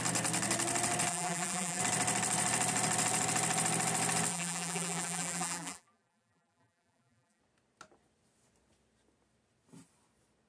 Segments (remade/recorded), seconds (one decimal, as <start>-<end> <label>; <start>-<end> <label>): 0.0-1.1 recorded; 1.1-1.8 remade; 1.8-4.3 recorded; 4.3-7.4 remade; 7.4-10.5 recorded